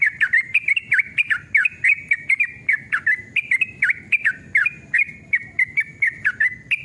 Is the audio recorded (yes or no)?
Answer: yes